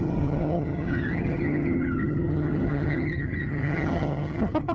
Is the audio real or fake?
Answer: fake